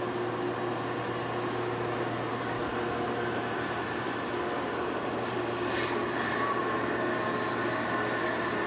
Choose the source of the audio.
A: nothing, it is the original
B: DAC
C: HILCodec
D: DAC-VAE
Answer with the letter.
A